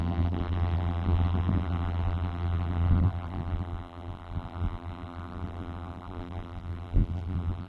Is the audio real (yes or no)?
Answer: no